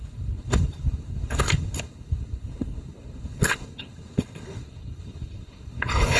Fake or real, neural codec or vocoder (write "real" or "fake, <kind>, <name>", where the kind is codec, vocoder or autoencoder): fake, codec, HILCodec